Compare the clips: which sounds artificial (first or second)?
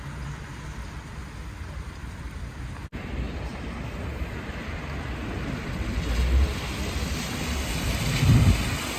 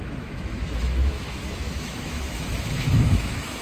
second